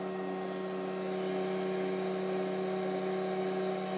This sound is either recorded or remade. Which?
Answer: recorded